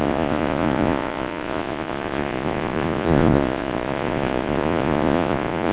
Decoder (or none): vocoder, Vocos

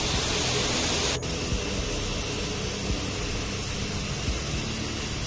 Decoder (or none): none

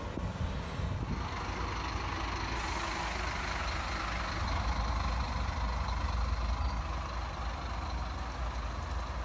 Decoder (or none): none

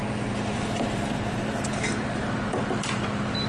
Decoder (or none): vocoder, BigVGAN v2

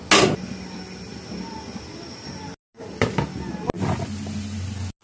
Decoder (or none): none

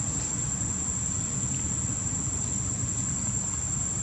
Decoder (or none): none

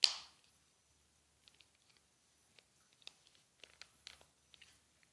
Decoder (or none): none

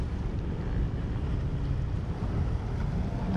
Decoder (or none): none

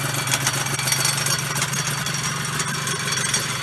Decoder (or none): none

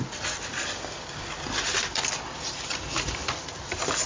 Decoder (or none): none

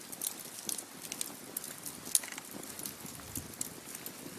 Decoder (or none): none